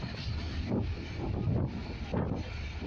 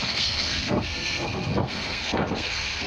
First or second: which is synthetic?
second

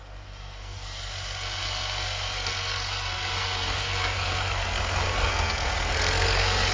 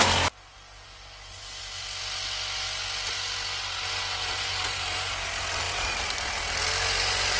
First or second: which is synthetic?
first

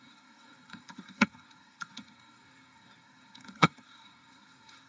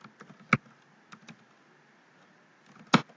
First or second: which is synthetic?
first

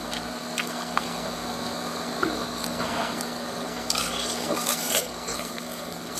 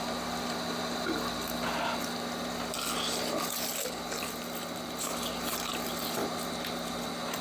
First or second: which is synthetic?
first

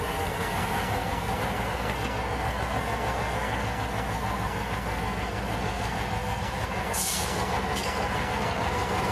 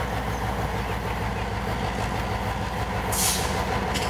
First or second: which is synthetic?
first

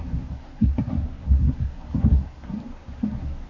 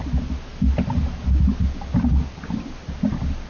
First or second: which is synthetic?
first